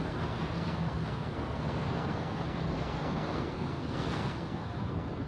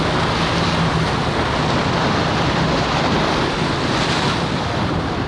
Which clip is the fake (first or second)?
first